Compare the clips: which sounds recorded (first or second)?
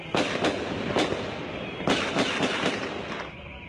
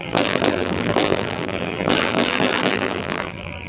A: first